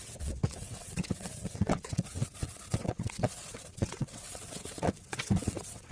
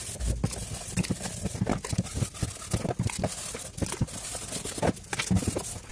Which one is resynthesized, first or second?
first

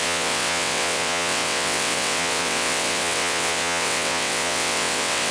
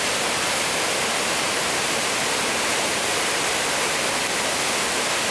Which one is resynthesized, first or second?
first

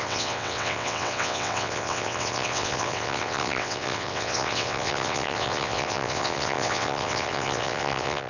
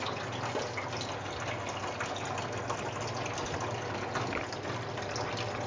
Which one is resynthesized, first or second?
first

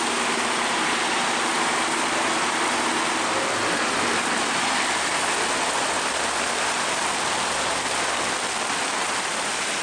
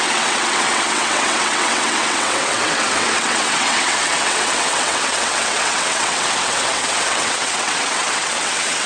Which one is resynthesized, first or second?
second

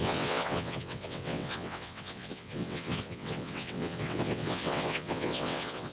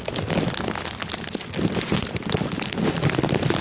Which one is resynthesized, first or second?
first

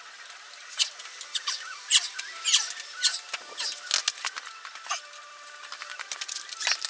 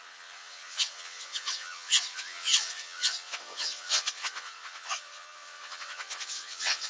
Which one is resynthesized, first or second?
second